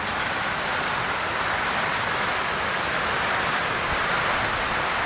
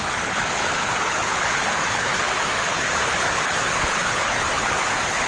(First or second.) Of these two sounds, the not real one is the second